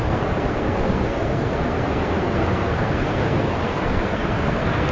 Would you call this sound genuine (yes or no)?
no